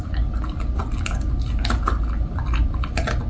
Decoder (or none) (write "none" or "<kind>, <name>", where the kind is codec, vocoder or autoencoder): none